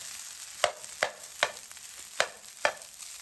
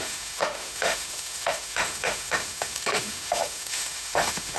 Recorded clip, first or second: first